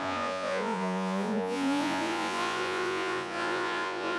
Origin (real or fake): fake